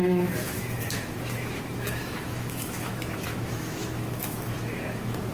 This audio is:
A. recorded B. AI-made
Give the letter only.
B